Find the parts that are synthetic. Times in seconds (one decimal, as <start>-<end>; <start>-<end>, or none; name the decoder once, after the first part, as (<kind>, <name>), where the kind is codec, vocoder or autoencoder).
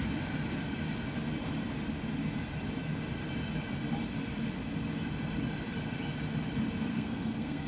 6.9-7.7 (codec, SNAC)